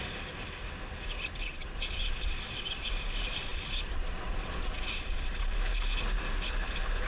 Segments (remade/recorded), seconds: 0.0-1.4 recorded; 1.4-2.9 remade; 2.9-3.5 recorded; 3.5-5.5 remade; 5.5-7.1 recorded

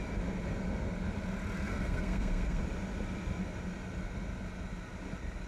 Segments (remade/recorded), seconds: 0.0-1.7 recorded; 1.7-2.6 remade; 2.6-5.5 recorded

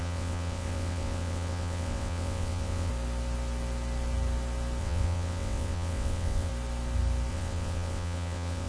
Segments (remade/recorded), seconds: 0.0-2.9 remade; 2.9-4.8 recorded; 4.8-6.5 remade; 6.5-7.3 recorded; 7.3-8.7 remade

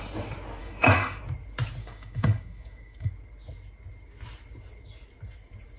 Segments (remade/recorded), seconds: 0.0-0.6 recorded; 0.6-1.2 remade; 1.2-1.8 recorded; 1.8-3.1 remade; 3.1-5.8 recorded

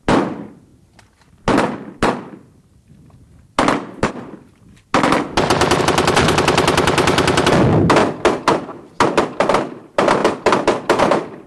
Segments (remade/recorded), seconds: 0.0-11.5 recorded

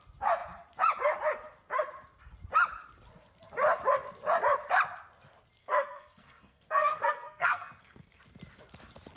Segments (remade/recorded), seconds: 0.0-5.6 recorded; 5.6-8.2 remade; 8.2-9.2 recorded

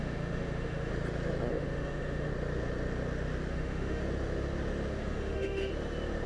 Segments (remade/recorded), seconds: 0.0-0.9 remade; 0.9-1.5 recorded; 1.5-2.3 remade; 2.3-3.5 recorded; 3.5-4.0 remade; 4.0-4.9 recorded; 4.9-5.7 remade; 5.7-6.3 recorded